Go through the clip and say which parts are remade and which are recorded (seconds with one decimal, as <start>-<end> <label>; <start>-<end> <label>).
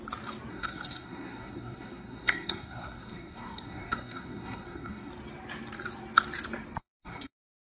0.0-0.5 recorded; 0.5-5.1 remade; 5.1-6.8 recorded; 6.8-7.6 remade